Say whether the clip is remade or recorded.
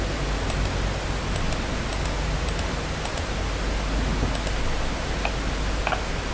recorded